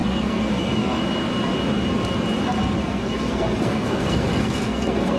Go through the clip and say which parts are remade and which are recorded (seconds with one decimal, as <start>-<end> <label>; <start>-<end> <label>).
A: 0.0-1.0 remade; 1.0-2.8 recorded; 2.8-5.2 remade

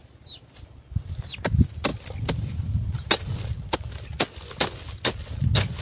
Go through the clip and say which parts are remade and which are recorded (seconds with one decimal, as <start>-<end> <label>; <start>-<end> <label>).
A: 0.0-5.8 recorded

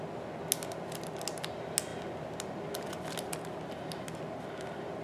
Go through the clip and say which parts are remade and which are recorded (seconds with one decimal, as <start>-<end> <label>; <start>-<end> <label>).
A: 0.0-5.0 recorded

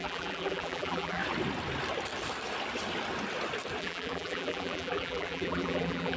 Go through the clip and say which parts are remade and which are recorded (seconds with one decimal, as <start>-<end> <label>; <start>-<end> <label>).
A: 0.0-1.2 remade; 1.2-3.8 recorded; 3.8-6.2 remade